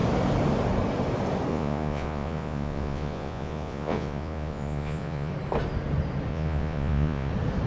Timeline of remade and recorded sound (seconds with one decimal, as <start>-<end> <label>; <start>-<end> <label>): 0.0-1.5 recorded; 1.5-5.3 remade; 5.3-6.3 recorded; 6.3-7.3 remade; 7.3-7.7 recorded